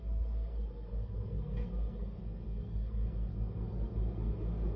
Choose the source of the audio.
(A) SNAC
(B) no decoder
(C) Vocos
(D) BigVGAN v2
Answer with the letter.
A